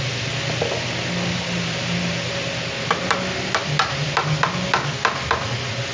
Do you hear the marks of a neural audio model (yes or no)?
no